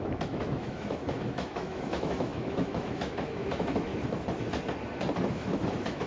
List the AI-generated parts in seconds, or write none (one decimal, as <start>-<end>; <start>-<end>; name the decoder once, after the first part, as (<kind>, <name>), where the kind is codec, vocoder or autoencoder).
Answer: 0.0-3.9 (autoencoder, DAC-VAE); 5.3-6.1